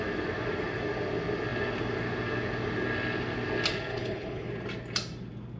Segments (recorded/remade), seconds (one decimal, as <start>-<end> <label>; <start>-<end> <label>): 0.0-3.9 recorded; 3.9-4.5 remade; 4.5-5.6 recorded